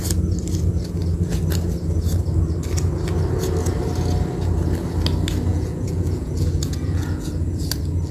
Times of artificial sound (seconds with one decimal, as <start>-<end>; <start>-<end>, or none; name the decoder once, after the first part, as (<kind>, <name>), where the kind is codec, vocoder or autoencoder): 5.5-7.3 (vocoder, Vocos)